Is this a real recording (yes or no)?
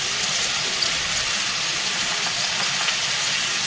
no